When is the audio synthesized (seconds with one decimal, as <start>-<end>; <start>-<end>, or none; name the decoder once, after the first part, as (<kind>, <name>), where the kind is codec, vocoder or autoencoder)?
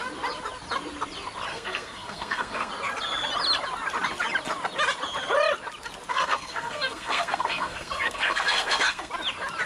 1.5-2.7 (codec, SNAC); 6.1-9.1